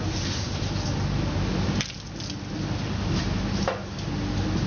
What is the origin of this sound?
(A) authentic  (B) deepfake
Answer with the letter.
A